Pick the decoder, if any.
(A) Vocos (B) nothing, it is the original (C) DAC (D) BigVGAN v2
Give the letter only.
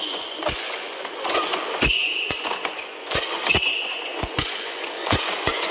A